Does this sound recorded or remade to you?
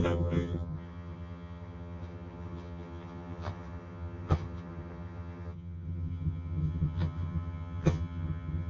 remade